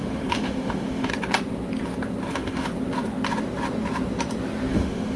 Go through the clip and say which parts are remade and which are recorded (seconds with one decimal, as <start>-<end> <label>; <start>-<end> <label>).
0.0-1.1 remade; 1.1-2.3 recorded; 2.3-2.7 remade; 2.7-4.7 recorded; 4.7-5.2 remade